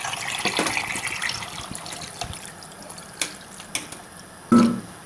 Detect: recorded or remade recorded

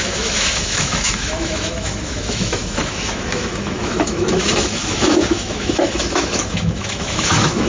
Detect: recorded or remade remade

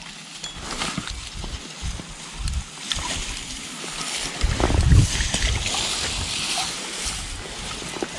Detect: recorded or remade recorded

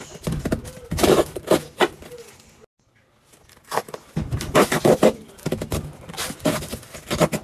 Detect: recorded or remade recorded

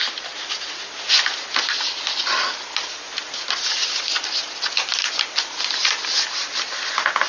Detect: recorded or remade recorded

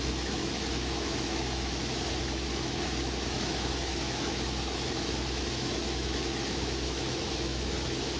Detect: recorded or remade remade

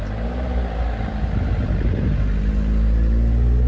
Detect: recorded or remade recorded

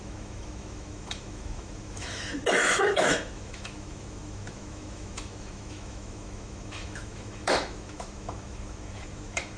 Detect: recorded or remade remade